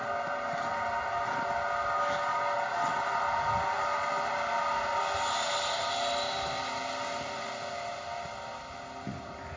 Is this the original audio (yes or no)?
yes